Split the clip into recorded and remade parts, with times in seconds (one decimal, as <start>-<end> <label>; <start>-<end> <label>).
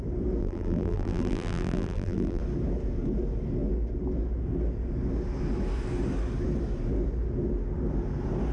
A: 0.0-0.4 recorded; 0.4-2.4 remade; 2.4-8.5 recorded